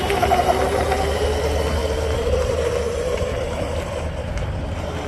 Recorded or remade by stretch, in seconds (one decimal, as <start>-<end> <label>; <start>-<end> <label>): 0.0-5.1 recorded